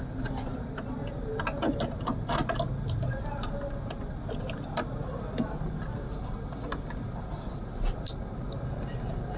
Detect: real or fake real